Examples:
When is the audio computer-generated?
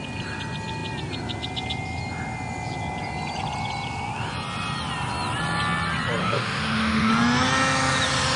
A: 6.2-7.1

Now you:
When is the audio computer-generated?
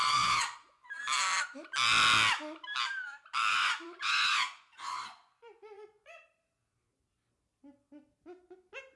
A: 0.0-1.0; 3.5-6.2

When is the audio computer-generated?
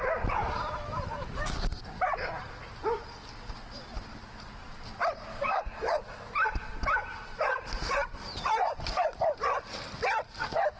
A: 5.3-6.3